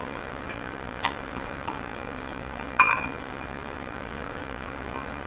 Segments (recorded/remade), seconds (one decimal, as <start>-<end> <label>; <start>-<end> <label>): 0.0-5.3 remade